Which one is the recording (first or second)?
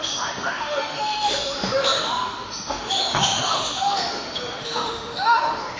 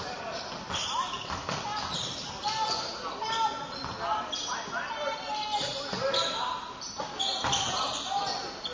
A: second